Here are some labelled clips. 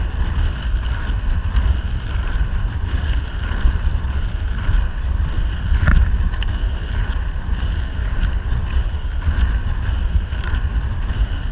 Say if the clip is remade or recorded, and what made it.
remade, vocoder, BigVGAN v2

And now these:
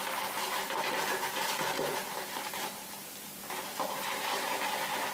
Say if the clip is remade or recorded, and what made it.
recorded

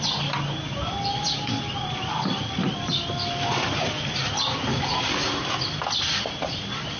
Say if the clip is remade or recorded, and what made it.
recorded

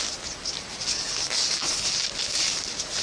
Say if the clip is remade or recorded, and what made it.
recorded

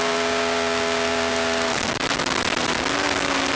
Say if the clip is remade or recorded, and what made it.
remade, vocoder, BigVGAN v2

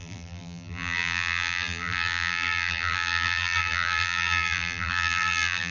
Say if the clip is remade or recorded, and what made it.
remade, vocoder, BigVGAN v2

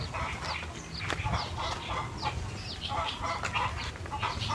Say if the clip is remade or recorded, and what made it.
recorded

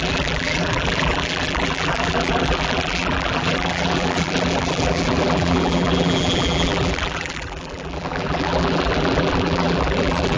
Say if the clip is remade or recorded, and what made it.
remade, vocoder, BigVGAN v2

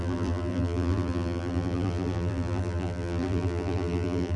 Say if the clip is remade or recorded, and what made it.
remade, vocoder, BigVGAN v2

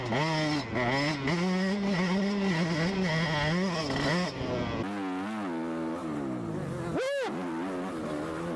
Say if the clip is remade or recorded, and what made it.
recorded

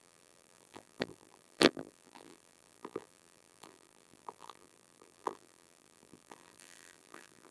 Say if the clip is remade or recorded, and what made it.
remade, vocoder, BigVGAN v2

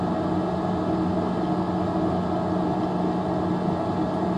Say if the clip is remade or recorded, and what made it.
recorded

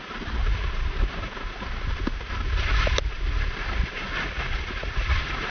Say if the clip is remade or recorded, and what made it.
remade, vocoder, BigVGAN v2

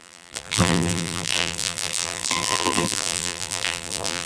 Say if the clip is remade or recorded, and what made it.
remade, vocoder, BigVGAN v2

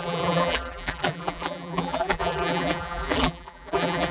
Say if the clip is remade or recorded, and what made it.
remade, vocoder, BigVGAN v2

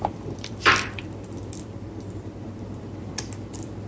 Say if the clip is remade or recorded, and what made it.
remade, vocoder, BigVGAN v2